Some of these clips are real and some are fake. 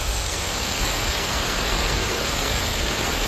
fake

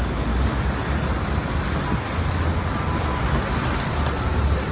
real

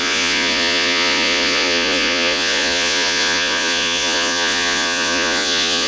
fake